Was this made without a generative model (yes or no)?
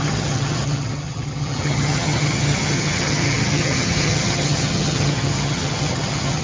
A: no